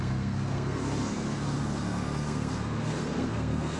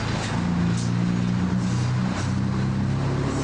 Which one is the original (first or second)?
second